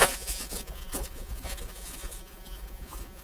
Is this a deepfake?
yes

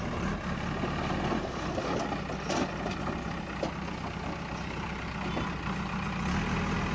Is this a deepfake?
no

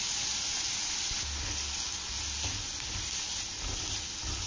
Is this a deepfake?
no